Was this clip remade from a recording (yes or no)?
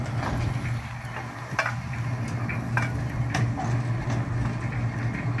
no